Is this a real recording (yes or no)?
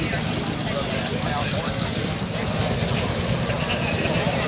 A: no